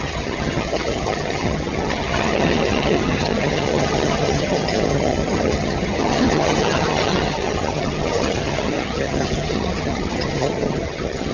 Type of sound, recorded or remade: remade